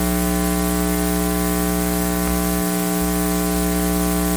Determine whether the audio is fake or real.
real